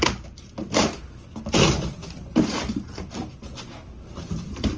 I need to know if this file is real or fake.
real